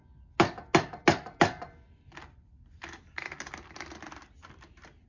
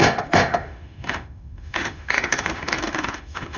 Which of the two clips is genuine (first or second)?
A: first